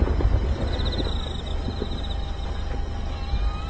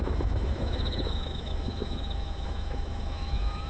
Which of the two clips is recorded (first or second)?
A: first